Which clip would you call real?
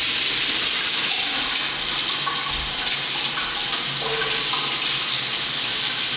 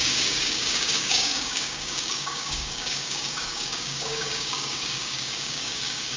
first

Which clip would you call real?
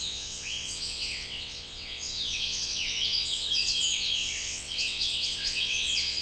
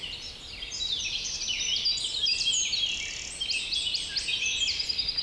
second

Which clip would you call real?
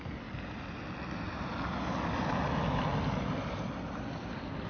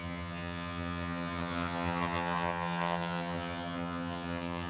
first